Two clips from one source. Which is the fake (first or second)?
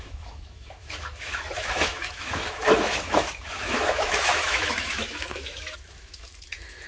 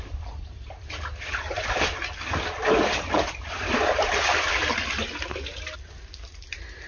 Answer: first